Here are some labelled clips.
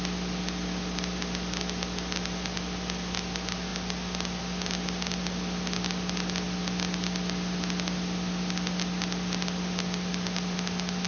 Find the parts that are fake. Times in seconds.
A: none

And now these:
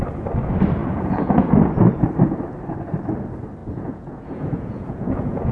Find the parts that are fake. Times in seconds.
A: 0.8-1.5 (vocoder, Vocos); 3.6-5.5

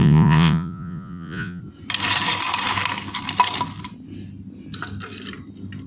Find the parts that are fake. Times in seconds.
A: 0.0-1.6 (vocoder, Vocos)

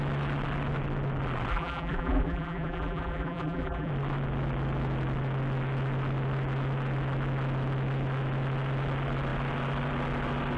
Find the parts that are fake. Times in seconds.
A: 1.5-3.9 (vocoder, BigVGAN v2)

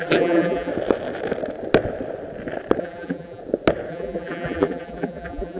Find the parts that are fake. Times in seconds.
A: 0.0-0.7 (vocoder, BigVGAN v2); 2.8-3.4; 3.9-5.6

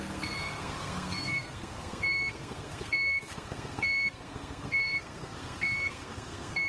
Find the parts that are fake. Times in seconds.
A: 0.0-6.7 (codec, SNAC)

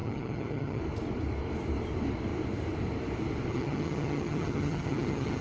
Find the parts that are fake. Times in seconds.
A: 0.0-0.8 (vocoder, HiFi-GAN); 3.5-5.4